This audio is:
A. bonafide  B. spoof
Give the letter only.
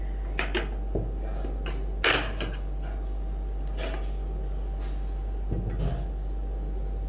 A